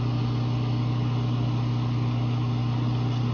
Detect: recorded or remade recorded